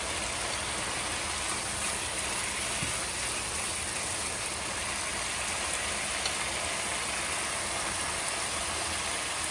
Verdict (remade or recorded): recorded